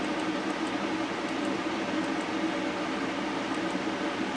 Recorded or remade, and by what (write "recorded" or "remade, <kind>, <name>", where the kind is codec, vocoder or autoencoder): remade, vocoder, BigVGAN v2